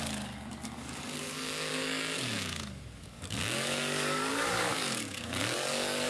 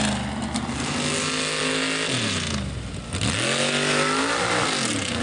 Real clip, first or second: second